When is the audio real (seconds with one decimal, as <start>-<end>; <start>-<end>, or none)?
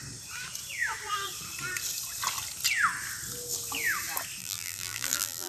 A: 0.0-4.4